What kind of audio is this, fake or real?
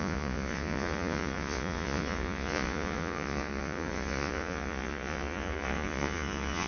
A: fake